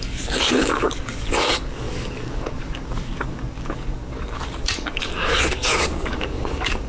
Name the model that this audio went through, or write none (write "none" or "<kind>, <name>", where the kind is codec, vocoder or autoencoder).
codec, DAC